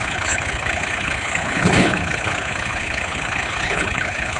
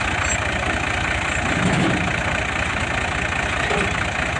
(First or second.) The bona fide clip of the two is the second